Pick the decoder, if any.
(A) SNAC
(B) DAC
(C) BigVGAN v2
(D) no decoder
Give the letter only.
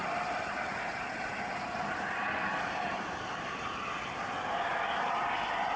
D